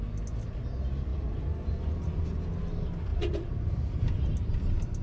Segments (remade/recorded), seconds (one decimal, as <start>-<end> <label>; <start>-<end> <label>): 0.0-3.1 recorded; 3.1-3.9 remade; 3.9-5.0 recorded